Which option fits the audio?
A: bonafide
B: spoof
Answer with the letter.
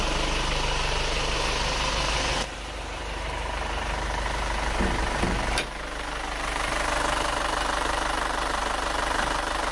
B